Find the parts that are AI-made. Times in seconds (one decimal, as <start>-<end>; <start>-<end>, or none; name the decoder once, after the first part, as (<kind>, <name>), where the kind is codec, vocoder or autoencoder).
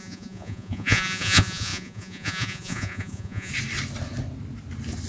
0.0-3.5 (vocoder, Vocos)